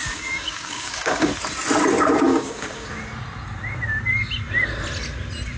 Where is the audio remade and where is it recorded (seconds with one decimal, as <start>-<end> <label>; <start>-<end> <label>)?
0.0-1.3 remade; 1.3-2.3 recorded; 2.3-2.9 remade; 2.9-5.6 recorded